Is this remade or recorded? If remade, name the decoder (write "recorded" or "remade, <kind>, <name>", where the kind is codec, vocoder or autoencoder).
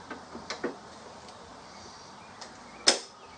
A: recorded